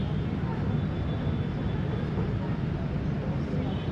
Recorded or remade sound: recorded